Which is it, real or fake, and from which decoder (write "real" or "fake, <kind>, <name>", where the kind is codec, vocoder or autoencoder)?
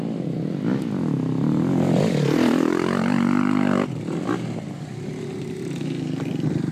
real